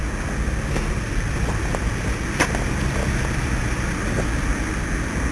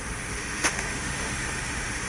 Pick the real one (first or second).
first